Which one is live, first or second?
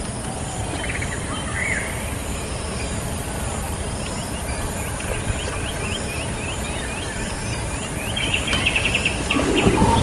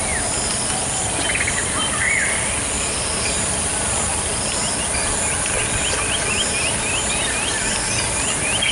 second